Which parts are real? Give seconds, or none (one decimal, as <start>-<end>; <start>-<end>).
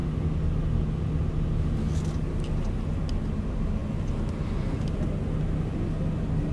0.0-6.5